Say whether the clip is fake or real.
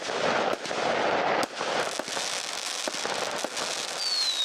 real